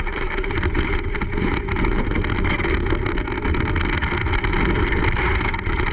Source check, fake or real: real